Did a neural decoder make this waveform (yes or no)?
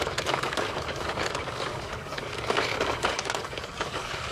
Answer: yes